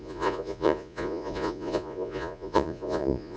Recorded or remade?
remade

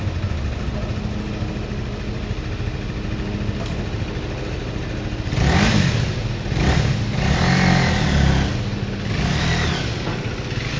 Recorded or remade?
recorded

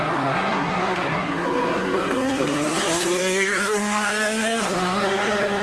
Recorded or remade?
remade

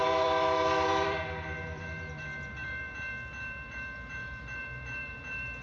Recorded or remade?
remade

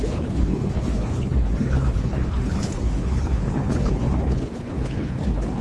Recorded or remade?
remade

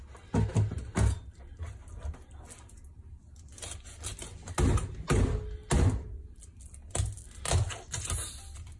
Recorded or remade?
recorded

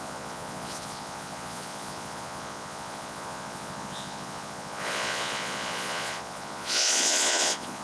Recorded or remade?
remade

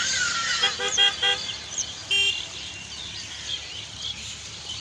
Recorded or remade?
recorded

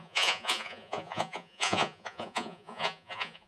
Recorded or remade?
remade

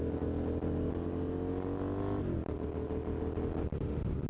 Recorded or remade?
recorded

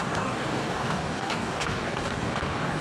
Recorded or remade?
remade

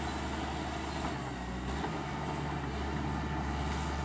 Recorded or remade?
recorded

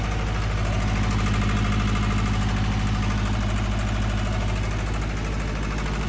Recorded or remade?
recorded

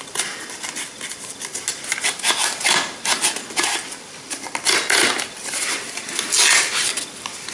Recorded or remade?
recorded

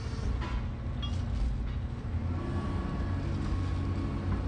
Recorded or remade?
recorded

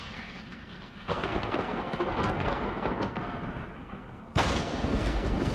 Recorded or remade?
remade